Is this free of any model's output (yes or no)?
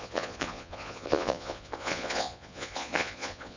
no